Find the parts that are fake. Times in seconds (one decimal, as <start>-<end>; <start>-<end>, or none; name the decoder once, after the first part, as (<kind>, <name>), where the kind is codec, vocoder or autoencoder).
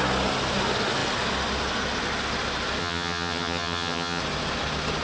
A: 2.8-4.2 (vocoder, HiFi-GAN)